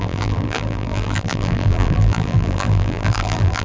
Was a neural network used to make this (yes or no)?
yes